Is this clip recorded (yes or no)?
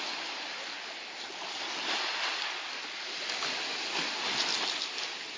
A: yes